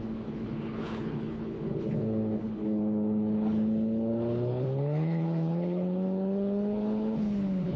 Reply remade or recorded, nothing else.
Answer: remade